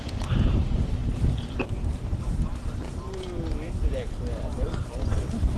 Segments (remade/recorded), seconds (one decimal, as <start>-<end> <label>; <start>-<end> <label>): 0.0-5.6 remade